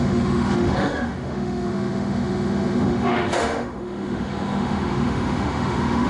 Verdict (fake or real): fake